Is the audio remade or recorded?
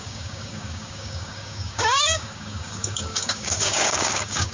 remade